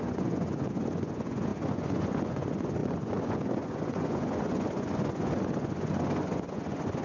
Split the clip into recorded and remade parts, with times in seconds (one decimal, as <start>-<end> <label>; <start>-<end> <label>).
0.0-7.0 remade